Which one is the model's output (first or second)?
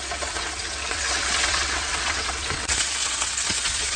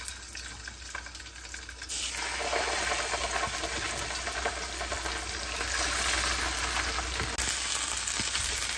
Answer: first